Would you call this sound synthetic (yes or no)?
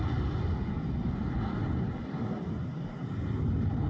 no